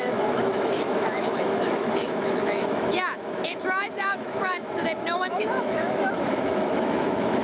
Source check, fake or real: fake